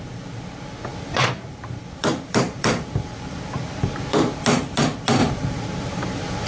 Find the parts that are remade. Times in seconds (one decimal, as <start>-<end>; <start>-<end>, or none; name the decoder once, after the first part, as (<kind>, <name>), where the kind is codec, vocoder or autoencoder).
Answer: 0.9-4.8 (vocoder, BigVGAN v2); 5.2-6.5